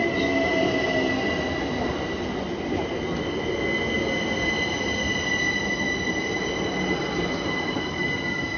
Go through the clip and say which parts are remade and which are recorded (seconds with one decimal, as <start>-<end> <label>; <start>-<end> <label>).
0.0-8.6 recorded